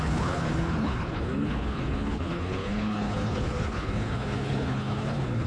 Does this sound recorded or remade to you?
remade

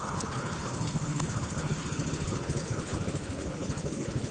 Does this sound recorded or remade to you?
remade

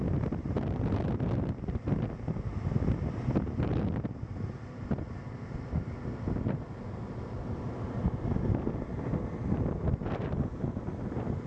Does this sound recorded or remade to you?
recorded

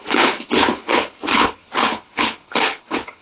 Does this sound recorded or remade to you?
remade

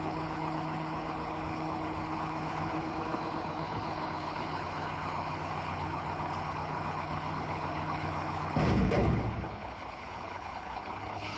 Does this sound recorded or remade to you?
remade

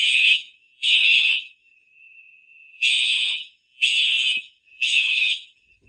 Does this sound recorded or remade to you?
remade